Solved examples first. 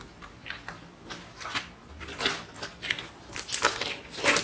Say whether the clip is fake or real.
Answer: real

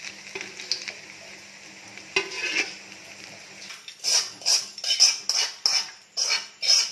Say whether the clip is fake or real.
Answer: real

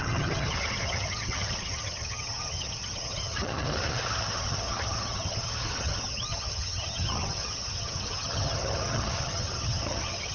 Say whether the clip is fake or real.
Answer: fake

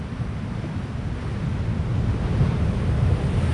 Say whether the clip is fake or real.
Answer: real